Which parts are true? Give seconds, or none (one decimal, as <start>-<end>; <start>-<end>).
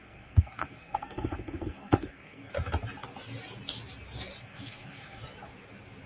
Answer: 2.5-4.4; 5.2-6.1